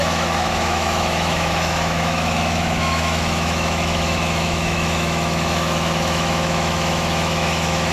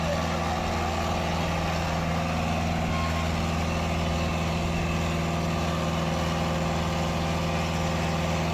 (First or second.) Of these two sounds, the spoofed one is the first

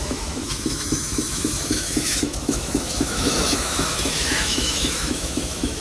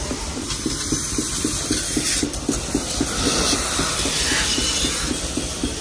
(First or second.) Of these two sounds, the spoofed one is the first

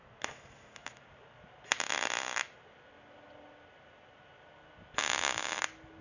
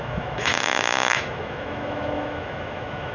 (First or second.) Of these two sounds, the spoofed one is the second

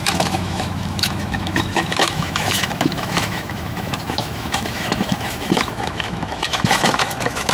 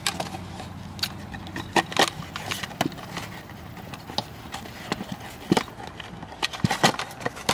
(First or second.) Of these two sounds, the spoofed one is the first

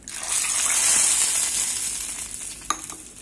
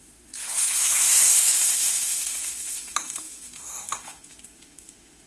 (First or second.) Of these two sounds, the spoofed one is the second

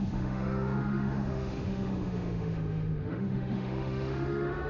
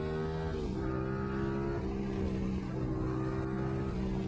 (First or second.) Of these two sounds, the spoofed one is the first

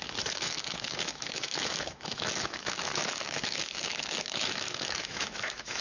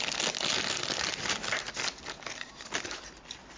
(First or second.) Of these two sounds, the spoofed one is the first